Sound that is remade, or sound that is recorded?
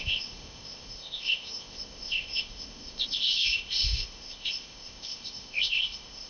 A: remade